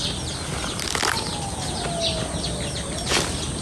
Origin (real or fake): real